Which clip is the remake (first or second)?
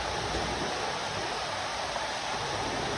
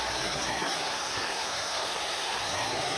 second